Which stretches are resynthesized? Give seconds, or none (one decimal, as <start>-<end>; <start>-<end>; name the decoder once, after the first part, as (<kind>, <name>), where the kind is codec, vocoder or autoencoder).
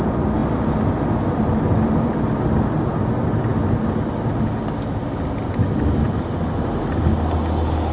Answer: none